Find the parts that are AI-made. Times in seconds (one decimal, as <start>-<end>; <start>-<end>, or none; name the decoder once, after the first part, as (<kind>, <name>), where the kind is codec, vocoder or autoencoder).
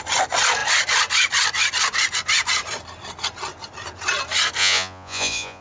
4.6-5.6 (vocoder, Vocos)